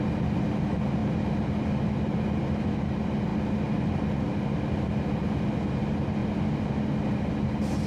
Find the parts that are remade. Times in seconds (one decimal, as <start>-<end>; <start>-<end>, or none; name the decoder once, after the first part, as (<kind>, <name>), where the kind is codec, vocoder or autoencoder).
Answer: none